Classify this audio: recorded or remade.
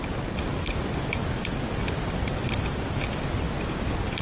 remade